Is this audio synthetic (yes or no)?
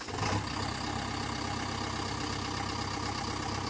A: no